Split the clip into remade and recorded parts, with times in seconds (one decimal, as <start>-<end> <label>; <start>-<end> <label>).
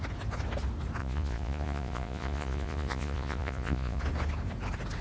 0.0-1.0 recorded; 1.0-4.0 remade; 4.0-5.0 recorded